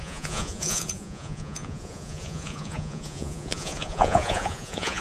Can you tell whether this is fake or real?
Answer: fake